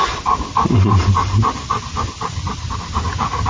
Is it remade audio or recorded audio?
recorded